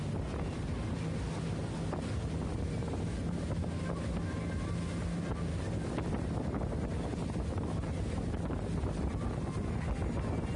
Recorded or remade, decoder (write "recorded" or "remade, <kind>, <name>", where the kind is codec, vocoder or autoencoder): recorded